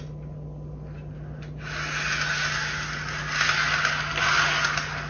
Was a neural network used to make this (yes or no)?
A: no